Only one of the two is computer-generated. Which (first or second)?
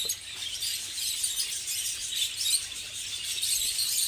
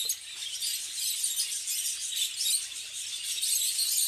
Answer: first